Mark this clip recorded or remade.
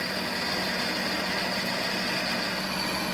recorded